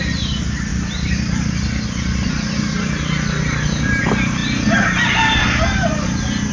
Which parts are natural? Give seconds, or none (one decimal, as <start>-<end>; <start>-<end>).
0.0-6.5